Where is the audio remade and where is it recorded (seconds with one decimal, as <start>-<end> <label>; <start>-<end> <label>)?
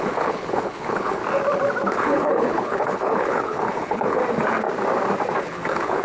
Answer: 0.0-1.2 remade; 1.2-1.9 recorded; 1.9-4.2 remade; 4.2-5.4 recorded; 5.4-6.0 remade